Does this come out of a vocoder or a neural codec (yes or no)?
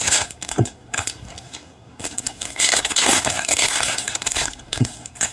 yes